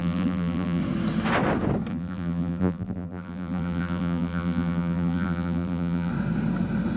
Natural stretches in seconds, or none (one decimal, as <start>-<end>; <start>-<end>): 0.8-1.9; 6.1-7.0